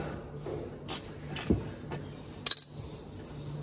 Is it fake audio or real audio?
real